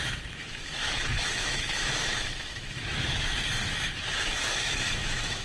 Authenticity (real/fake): fake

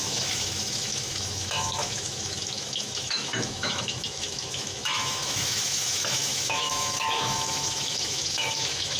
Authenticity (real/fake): fake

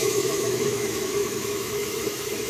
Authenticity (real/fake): fake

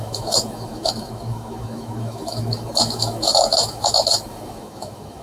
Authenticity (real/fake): fake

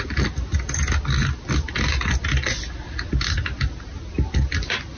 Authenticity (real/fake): real